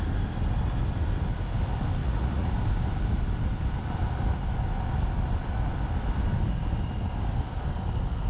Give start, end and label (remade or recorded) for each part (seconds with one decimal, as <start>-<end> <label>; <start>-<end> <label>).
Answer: 0.0-2.0 recorded; 2.0-2.5 remade; 2.5-8.3 recorded